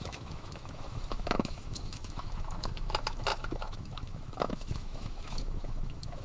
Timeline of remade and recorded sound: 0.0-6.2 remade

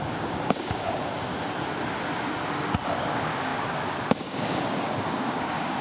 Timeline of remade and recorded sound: 0.0-1.0 remade; 1.0-3.0 recorded; 3.0-5.8 remade